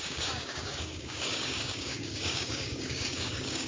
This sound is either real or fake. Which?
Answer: fake